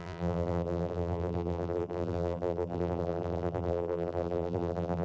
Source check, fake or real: fake